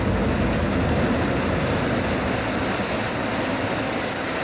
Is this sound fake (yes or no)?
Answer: no